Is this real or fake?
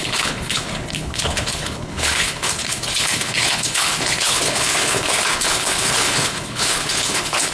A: fake